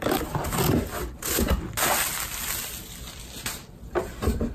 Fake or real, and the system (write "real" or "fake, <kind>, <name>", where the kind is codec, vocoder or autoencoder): real